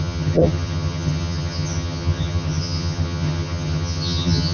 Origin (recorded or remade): remade